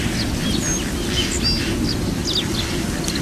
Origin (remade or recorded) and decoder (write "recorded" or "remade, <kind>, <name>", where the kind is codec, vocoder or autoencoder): recorded